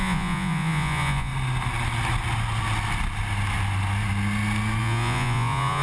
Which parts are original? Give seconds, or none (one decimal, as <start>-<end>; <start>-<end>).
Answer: 1.3-4.8